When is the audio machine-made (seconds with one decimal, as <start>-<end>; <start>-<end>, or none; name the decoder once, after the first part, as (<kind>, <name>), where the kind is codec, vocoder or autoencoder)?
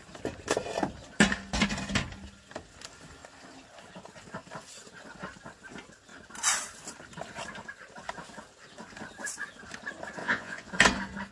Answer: 10.2-10.7 (vocoder, Vocos)